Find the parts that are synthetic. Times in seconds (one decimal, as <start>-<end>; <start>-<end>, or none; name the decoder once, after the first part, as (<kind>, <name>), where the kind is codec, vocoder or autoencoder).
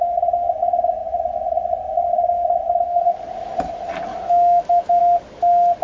4.1-5.0 (autoencoder, DAC-VAE)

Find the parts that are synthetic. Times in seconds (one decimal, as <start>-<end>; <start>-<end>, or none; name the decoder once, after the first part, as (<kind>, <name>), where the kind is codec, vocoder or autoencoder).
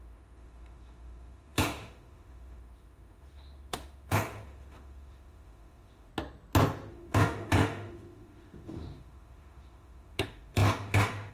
0.0-6.1 (autoencoder, DAC-VAE); 6.9-11.3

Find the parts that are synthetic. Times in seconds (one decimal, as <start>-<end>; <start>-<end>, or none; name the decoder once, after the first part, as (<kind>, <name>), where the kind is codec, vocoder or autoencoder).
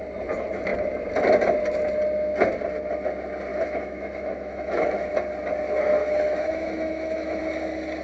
3.5-5.1 (autoencoder, DAC-VAE); 6.0-7.4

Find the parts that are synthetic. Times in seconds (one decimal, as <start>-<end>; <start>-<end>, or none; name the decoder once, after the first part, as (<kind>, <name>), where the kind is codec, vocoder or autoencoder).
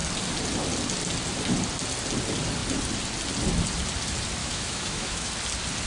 4.4-5.3 (autoencoder, DAC-VAE)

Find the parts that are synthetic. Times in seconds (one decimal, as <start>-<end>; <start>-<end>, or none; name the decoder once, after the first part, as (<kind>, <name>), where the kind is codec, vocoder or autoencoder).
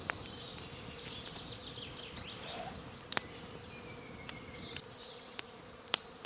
none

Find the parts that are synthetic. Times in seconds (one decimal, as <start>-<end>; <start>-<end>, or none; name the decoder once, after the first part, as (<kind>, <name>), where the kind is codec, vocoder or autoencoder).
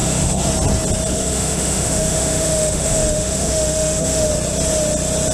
0.0-0.5 (autoencoder, DAC-VAE); 1.1-4.3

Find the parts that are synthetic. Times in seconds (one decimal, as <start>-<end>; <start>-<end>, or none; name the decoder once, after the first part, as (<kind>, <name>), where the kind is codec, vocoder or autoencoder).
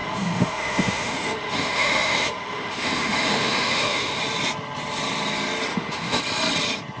0.0-4.2 (autoencoder, DAC-VAE); 5.7-6.2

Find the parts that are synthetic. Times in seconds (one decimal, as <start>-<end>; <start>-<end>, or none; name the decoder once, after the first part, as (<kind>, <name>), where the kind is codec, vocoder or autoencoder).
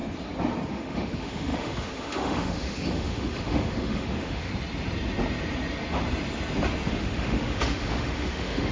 0.7-4.5 (autoencoder, DAC-VAE); 6.9-8.7